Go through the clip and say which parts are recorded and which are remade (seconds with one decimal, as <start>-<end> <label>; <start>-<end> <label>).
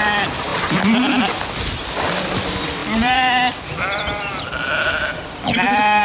0.0-2.8 recorded; 2.8-6.0 remade